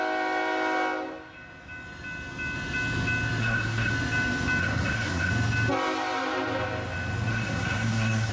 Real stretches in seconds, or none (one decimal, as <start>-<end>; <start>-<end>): 0.0-3.4; 3.9-4.6; 5.3-7.3